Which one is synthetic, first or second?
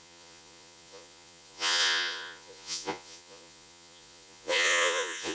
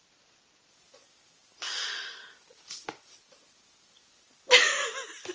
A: first